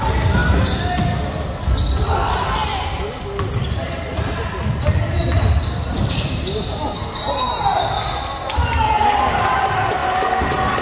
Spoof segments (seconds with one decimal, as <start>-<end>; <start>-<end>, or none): none